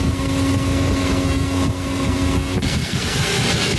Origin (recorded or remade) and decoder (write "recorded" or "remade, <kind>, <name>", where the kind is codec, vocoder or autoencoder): remade, codec, SNAC